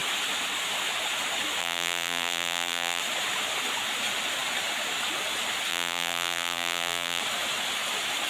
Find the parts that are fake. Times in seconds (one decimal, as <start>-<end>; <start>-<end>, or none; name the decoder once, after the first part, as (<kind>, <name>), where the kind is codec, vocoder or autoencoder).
1.6-3.0 (vocoder, BigVGAN v2); 5.7-7.2